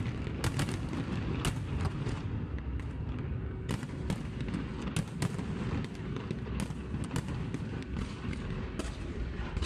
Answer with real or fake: real